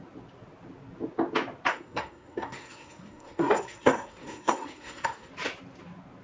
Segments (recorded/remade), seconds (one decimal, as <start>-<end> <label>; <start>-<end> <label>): 0.0-1.7 recorded; 1.7-5.3 remade; 5.3-6.2 recorded